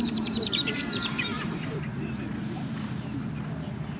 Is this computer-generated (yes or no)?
yes